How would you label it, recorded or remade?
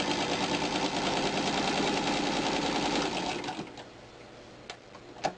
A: recorded